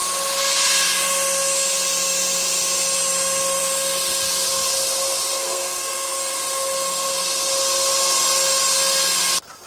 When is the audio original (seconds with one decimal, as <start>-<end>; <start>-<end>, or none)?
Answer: 0.0-5.3; 6.3-9.7